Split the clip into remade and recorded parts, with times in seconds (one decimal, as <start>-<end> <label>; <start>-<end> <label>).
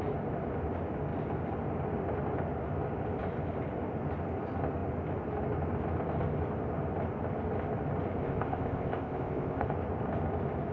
0.0-8.2 recorded; 8.2-9.7 remade; 9.7-10.7 recorded